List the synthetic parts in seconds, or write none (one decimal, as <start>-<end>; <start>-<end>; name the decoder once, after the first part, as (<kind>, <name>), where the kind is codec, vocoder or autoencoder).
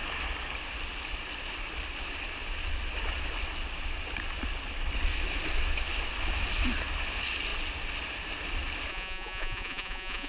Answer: 8.9-10.3 (vocoder, Vocos)